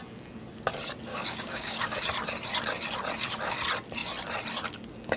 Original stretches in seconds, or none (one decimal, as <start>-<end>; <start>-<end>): 0.0-1.1; 2.0-5.2